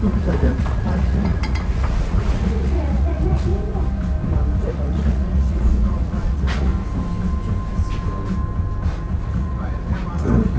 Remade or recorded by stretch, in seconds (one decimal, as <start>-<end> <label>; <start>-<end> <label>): 0.0-3.5 remade; 3.5-4.6 recorded; 4.6-6.7 remade; 6.7-9.2 recorded; 9.2-10.6 remade